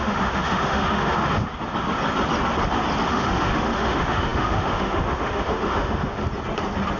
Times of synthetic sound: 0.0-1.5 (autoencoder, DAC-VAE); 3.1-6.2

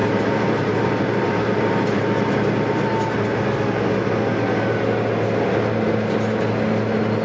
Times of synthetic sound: 0.0-2.0 (vocoder, BigVGAN v2)

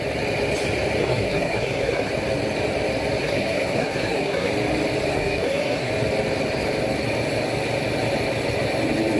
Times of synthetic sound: 1.0-2.1 (codec, SNAC); 3.2-4.5; 5.1-5.9

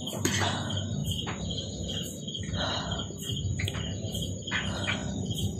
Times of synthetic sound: 5.0-5.6 (vocoder, BigVGAN v2)

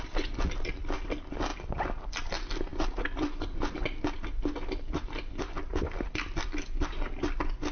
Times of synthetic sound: none

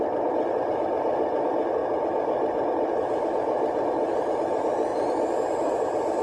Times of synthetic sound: none